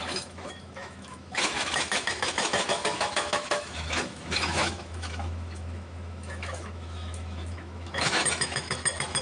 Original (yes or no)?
no